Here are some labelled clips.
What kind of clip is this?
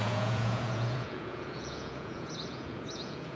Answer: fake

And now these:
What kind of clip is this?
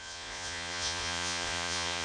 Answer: fake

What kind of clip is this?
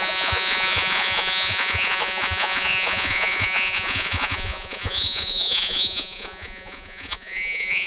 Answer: fake